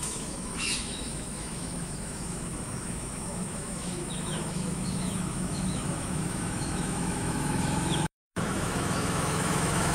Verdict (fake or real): fake